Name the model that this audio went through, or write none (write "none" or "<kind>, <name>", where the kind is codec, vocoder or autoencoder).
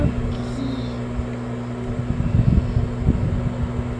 none